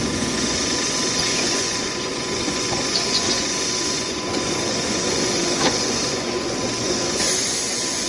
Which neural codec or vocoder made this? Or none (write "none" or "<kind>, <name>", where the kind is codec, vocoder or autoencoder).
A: vocoder, Vocos